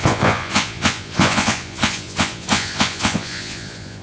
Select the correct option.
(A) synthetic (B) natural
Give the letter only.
A